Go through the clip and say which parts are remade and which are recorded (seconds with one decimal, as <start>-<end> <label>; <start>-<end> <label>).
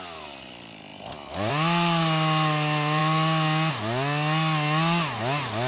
0.0-5.7 recorded